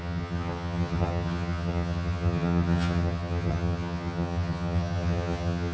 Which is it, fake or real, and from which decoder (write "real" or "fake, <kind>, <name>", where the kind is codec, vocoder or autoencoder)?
fake, vocoder, HiFi-GAN